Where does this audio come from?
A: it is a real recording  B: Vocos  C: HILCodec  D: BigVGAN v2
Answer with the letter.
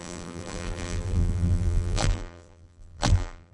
D